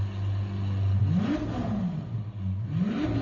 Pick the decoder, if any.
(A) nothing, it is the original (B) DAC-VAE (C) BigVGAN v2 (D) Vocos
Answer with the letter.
A